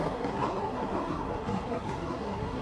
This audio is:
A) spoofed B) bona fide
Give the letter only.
A